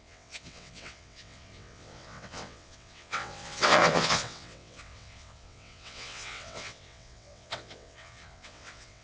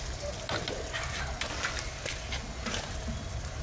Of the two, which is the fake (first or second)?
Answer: first